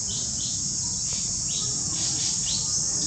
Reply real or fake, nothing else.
real